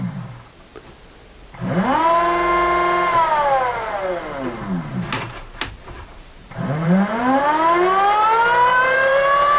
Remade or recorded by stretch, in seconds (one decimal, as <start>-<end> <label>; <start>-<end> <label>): 0.0-3.7 recorded; 3.7-4.2 remade; 4.2-4.9 recorded; 4.9-7.4 remade; 7.4-8.7 recorded; 8.7-9.6 remade